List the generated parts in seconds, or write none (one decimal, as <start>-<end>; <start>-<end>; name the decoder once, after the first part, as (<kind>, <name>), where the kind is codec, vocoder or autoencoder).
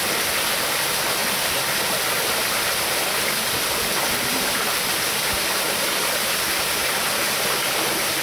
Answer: 0.0-8.2 (vocoder, BigVGAN v2)